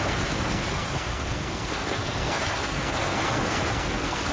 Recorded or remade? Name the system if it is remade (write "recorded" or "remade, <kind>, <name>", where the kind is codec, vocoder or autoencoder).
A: remade, codec, SNAC